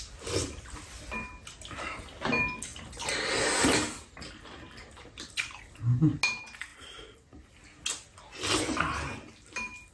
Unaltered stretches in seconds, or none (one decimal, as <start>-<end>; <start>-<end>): 0.0-9.9